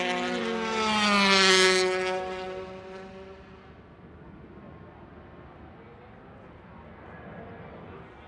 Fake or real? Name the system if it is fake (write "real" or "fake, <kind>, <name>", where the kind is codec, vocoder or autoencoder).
real